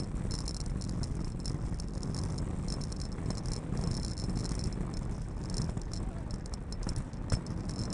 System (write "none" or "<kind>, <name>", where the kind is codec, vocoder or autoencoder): none